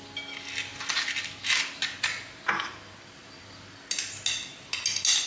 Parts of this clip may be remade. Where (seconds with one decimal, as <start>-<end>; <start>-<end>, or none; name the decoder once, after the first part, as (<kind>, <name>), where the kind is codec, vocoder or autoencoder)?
none

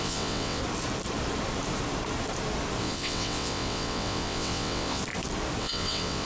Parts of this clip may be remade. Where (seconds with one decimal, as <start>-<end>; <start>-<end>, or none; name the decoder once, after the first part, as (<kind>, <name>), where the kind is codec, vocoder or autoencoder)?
0.0-0.6 (vocoder, WaveNeXt); 2.8-5.0; 5.6-6.3

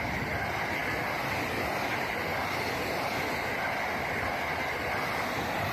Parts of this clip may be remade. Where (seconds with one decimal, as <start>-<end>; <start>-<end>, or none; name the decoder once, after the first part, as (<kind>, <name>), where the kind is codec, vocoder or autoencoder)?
none

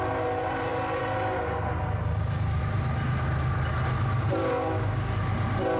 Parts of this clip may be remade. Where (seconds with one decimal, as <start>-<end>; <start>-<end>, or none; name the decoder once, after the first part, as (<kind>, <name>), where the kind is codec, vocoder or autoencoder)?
4.4-5.1 (codec, DAC)

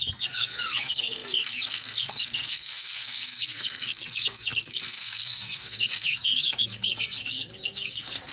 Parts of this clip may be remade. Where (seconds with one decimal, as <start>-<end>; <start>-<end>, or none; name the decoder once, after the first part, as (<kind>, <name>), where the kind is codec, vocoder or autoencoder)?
0.0-8.3 (codec, SNAC)